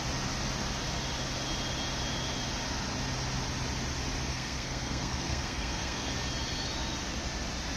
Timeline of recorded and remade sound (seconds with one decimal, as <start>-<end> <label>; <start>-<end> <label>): 0.0-4.3 recorded; 4.3-6.1 remade; 6.1-7.8 recorded